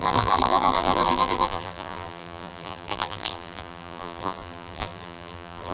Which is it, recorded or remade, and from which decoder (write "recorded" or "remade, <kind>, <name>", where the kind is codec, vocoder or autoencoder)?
remade, vocoder, BigVGAN v2